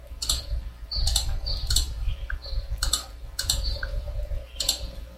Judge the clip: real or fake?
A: fake